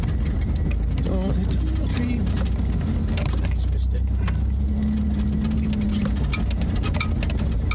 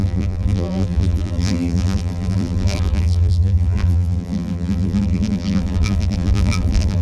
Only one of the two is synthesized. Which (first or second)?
second